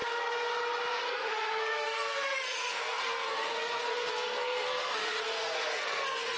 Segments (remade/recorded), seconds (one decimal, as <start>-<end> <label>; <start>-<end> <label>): 0.0-0.9 recorded; 0.9-6.4 remade